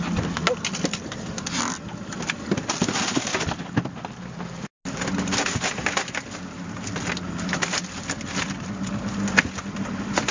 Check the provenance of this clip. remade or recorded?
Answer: recorded